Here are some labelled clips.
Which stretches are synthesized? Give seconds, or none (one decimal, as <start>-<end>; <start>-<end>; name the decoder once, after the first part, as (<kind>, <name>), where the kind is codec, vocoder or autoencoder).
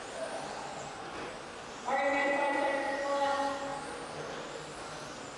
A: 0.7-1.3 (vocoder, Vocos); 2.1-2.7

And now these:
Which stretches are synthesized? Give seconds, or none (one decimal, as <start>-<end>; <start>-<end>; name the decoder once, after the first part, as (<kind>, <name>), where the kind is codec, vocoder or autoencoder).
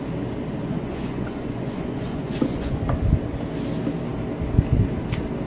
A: 0.6-2.8 (vocoder, Vocos)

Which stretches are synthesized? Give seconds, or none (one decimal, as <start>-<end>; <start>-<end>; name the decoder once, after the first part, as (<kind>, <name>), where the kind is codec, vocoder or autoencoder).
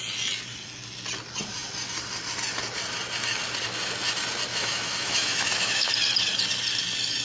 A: 4.5-5.9 (autoencoder, DAC-VAE)